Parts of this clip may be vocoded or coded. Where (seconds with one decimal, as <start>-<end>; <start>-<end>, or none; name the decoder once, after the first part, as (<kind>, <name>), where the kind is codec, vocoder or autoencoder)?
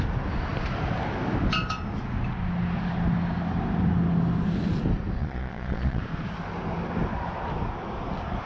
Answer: 5.2-6.0 (vocoder, Vocos)